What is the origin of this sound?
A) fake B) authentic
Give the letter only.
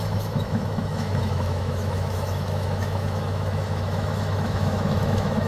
A